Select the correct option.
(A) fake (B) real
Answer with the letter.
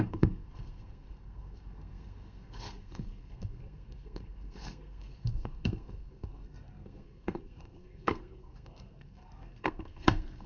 A